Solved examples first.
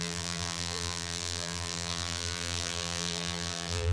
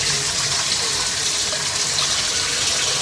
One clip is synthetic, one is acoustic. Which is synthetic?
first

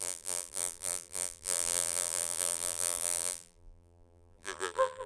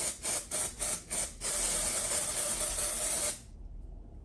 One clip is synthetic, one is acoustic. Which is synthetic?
first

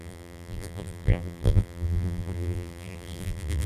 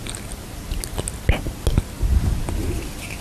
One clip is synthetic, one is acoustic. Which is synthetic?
first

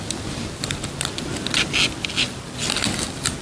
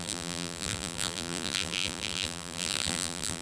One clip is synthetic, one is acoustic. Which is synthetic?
second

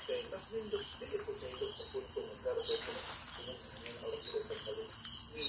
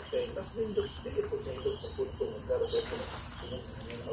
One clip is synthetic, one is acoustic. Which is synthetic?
second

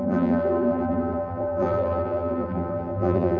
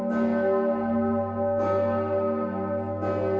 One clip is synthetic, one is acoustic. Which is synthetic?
first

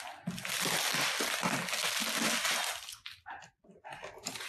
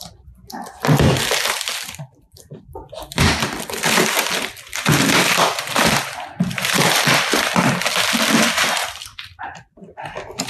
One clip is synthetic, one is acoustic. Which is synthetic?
second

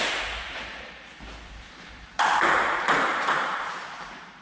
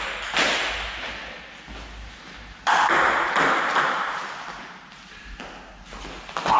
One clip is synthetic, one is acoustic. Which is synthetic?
first